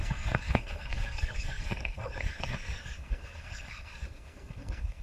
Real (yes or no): no